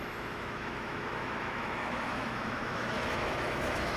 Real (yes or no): no